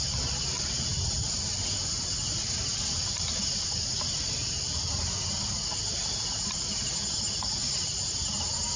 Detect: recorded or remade recorded